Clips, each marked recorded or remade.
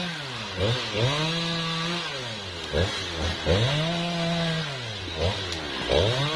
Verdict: recorded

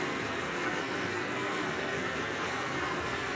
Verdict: remade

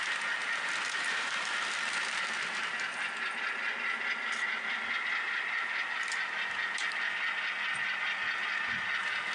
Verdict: recorded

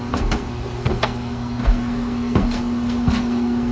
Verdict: remade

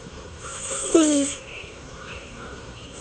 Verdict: remade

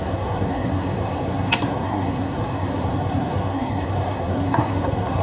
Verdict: remade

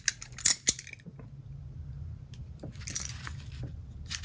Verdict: recorded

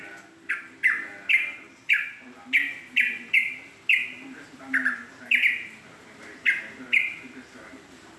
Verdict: recorded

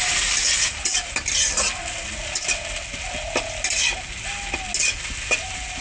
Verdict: recorded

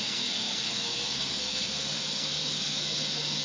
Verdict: remade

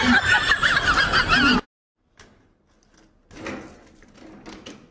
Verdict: recorded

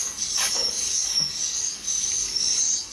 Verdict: remade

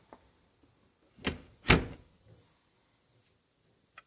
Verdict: recorded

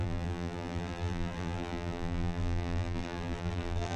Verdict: remade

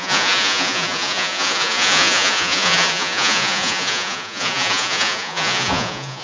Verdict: remade